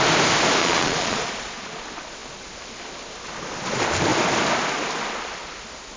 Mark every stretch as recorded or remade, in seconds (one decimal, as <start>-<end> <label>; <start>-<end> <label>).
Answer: 0.0-0.6 recorded; 0.6-1.8 remade; 1.8-6.0 recorded